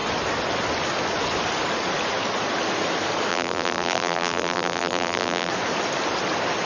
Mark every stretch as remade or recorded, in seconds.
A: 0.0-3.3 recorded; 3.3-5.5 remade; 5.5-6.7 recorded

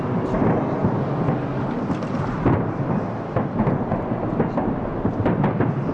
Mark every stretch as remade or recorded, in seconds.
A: 0.0-5.9 recorded

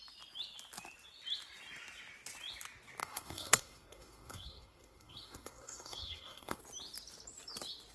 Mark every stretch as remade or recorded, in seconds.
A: 0.0-3.0 recorded; 3.0-6.6 remade; 6.6-7.9 recorded

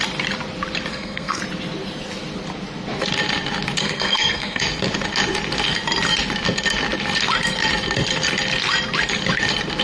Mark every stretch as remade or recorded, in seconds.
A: 0.0-0.9 recorded; 0.9-1.4 remade; 1.4-3.8 recorded; 3.8-4.6 remade; 4.6-9.8 recorded